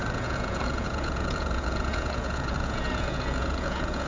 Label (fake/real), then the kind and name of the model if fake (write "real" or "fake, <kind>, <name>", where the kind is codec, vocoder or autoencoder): fake, vocoder, Vocos